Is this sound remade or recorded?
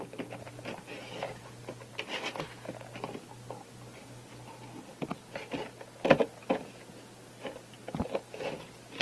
recorded